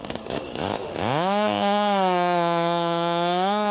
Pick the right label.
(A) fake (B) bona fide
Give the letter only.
A